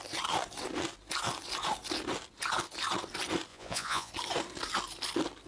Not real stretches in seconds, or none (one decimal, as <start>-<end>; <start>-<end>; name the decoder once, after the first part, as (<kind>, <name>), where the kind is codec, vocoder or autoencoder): 3.5-4.1 (vocoder, Vocos)